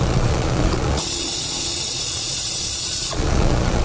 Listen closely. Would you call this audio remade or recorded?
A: remade